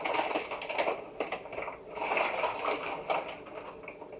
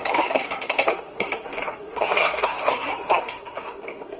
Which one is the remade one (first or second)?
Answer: second